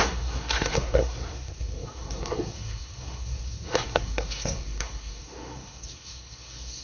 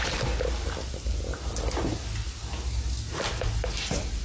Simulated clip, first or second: first